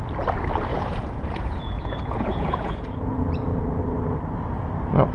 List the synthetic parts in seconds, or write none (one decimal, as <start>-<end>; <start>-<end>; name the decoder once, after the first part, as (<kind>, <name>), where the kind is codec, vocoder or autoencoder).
0.7-3.8 (vocoder, Vocos)